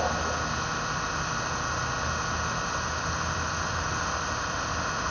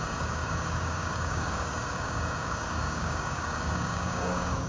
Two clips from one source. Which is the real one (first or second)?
first